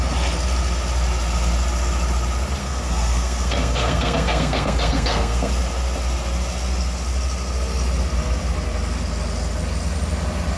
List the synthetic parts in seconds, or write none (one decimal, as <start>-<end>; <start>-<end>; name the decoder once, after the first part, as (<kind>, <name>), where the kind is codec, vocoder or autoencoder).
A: 2.6-5.5 (codec, SNAC)